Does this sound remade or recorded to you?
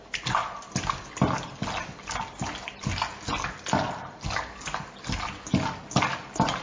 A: recorded